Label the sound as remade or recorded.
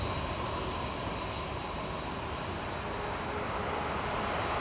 recorded